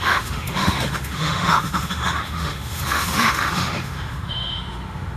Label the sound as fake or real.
fake